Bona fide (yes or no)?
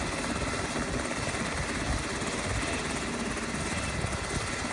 yes